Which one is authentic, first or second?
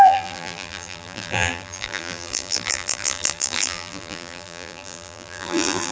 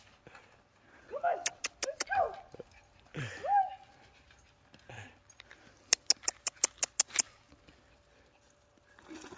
second